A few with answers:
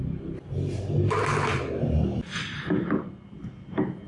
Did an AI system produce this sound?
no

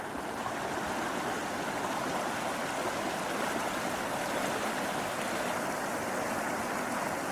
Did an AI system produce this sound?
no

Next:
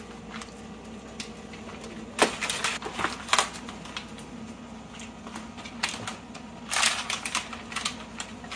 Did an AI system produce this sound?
no